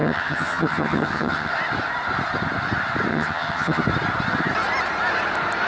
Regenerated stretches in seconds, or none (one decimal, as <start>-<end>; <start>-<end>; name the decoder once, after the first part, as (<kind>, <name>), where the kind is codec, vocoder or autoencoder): 0.0-1.5 (vocoder, HiFi-GAN); 3.1-3.8